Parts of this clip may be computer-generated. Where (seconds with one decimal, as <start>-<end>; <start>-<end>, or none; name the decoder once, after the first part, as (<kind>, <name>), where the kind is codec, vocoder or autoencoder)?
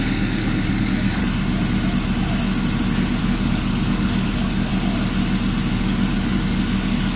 0.0-1.2 (codec, DAC); 3.2-4.7; 5.7-7.2